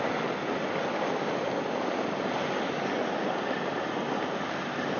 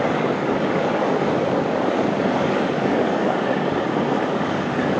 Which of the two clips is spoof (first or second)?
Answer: second